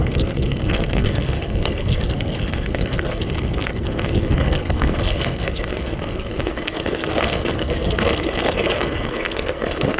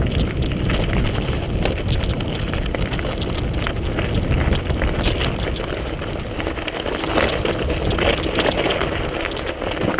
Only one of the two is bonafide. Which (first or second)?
second